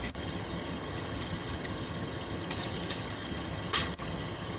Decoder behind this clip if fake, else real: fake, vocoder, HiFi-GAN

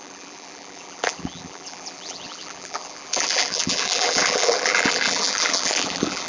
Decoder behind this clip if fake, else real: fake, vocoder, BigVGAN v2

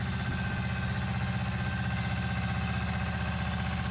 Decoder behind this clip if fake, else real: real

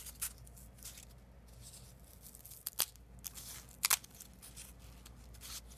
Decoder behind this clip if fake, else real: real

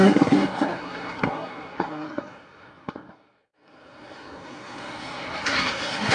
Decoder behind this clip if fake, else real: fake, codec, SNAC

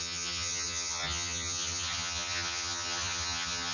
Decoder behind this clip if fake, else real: fake, vocoder, HiFi-GAN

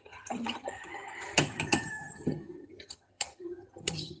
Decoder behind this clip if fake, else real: fake, vocoder, HiFi-GAN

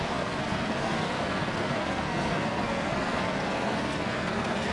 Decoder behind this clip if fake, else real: fake, codec, SNAC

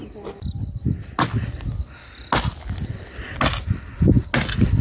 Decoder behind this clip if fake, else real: real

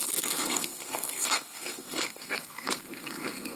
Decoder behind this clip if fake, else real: fake, codec, SNAC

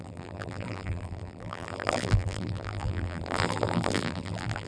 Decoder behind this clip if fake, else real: fake, vocoder, BigVGAN v2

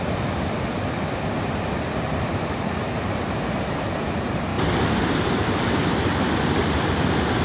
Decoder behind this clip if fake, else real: real